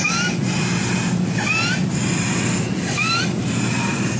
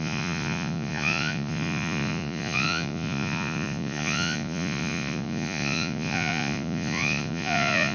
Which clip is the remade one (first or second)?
second